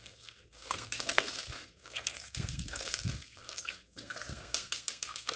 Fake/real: fake